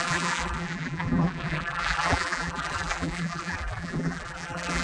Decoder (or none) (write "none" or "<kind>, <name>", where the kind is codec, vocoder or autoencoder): vocoder, BigVGAN v2